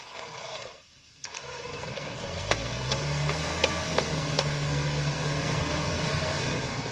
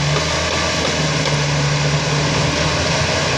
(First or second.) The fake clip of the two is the first